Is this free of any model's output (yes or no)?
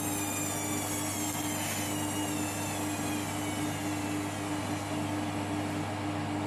yes